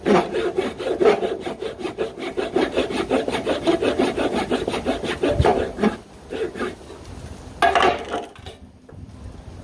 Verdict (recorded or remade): recorded